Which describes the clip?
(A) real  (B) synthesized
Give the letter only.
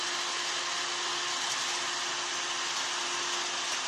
A